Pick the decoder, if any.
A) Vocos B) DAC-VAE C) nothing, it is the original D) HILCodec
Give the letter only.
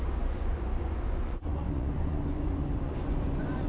A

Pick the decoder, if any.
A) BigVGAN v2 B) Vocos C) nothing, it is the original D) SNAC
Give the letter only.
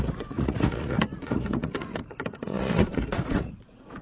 B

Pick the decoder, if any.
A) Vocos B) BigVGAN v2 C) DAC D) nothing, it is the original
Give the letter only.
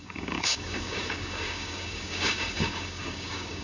C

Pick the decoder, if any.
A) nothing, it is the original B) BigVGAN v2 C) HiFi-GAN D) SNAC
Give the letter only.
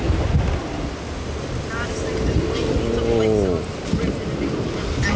A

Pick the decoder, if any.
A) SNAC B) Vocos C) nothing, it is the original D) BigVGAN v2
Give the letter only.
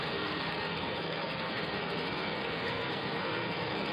A